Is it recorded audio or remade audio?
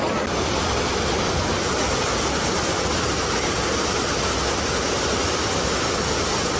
recorded